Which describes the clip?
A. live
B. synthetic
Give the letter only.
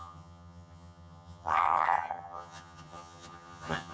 B